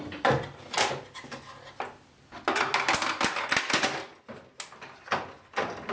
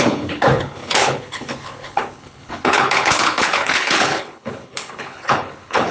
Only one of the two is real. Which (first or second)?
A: first